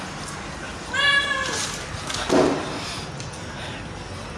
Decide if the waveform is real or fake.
real